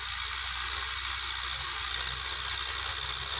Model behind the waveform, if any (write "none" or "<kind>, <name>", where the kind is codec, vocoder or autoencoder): none